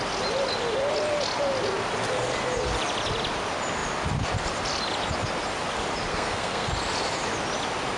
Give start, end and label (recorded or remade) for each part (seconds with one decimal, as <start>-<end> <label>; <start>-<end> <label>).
0.0-6.1 recorded; 6.1-6.7 remade; 6.7-8.0 recorded